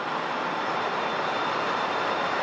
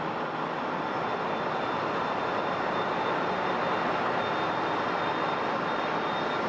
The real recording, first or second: second